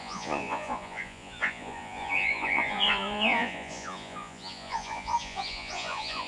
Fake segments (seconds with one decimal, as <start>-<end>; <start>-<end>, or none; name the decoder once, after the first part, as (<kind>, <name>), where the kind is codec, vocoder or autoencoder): 0.0-6.3 (vocoder, Vocos)